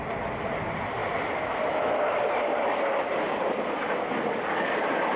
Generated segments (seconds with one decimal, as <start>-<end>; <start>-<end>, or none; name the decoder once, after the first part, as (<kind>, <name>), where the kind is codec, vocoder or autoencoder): 0.0-5.2 (vocoder, BigVGAN v2)